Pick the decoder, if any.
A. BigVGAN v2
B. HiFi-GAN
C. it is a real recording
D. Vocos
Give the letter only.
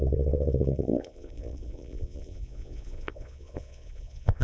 D